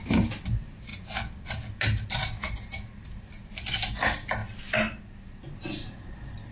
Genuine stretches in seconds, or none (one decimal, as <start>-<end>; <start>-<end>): 0.0-6.5